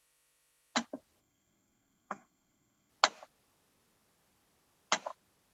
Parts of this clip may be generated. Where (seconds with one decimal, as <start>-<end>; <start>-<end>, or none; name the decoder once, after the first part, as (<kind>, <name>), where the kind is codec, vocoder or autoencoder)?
1.2-2.9 (codec, SNAC)